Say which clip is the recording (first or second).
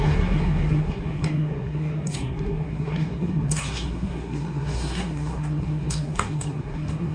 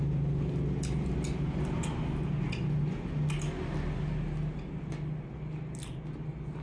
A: second